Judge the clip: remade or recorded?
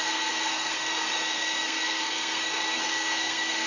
remade